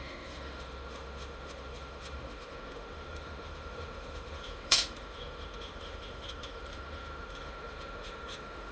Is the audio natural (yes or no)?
no